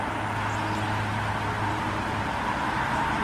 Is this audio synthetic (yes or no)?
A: no